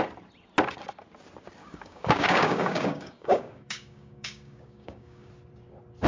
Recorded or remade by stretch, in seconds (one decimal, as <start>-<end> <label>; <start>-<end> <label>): 0.0-1.6 recorded; 1.6-5.3 remade; 5.3-6.1 recorded